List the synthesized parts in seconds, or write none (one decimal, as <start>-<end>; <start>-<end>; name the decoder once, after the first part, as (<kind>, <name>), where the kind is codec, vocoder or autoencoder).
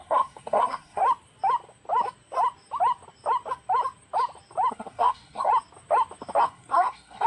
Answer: 0.0-1.0 (codec, SNAC); 4.7-5.5; 6.4-7.3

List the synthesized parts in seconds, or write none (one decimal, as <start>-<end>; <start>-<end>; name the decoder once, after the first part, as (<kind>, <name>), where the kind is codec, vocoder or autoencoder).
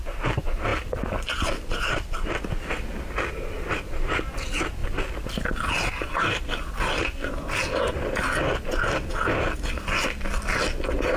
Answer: none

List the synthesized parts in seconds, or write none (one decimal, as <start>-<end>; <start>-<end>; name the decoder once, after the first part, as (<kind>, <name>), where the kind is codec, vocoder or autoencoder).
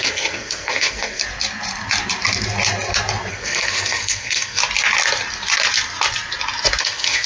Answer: 0.0-1.2 (codec, SNAC); 3.3-4.6; 6.8-7.3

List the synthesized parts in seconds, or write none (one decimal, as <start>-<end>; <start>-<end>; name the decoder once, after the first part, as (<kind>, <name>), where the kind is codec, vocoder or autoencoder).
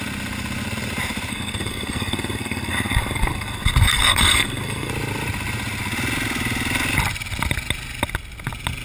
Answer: 1.3-4.9 (codec, SNAC)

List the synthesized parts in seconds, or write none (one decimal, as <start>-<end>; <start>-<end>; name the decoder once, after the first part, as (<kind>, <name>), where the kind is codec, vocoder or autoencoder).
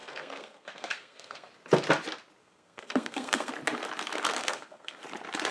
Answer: 0.0-1.5 (codec, SNAC); 2.4-3.5; 4.4-5.0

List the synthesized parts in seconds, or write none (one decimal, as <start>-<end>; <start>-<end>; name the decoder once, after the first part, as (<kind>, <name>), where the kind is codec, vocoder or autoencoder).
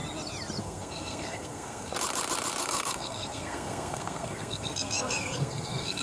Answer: 0.6-1.9 (codec, SNAC); 2.6-6.0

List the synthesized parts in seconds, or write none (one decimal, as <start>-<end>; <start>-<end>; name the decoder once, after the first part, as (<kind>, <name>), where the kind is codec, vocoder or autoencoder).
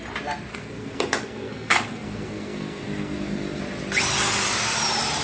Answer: 0.5-3.6 (codec, SNAC)